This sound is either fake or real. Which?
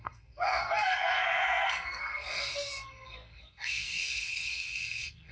fake